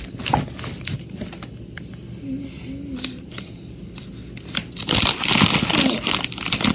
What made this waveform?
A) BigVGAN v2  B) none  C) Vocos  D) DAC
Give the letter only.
B